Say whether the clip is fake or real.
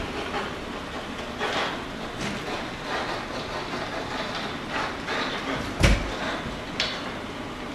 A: real